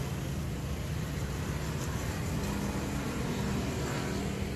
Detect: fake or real real